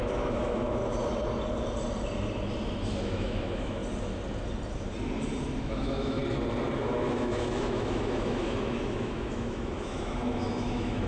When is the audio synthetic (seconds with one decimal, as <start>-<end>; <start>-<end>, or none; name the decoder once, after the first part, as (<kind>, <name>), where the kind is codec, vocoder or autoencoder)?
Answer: 0.0-0.8 (autoencoder, DAC-VAE); 3.0-3.8; 5.6-6.2; 6.8-11.1